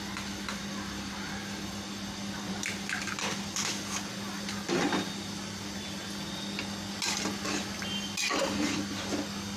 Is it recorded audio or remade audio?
recorded